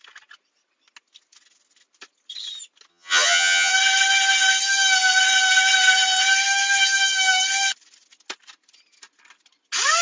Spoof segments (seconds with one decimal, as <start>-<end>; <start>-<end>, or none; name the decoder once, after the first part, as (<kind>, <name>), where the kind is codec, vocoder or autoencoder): 2.9-3.7 (vocoder, HiFi-GAN)